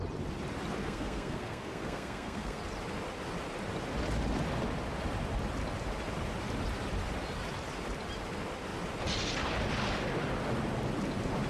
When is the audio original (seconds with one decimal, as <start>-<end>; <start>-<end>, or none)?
0.0-0.8; 2.6-11.5